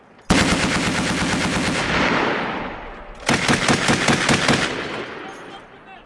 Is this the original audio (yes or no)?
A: yes